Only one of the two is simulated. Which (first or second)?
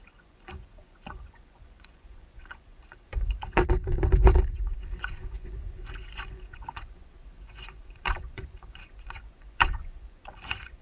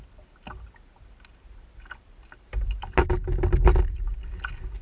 first